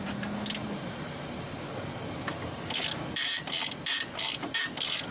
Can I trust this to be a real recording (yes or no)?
yes